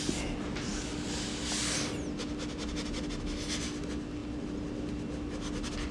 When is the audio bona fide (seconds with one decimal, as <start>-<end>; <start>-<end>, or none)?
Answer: 0.0-5.9